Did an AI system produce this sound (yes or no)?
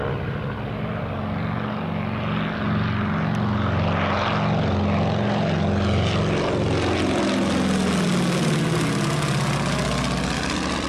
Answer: no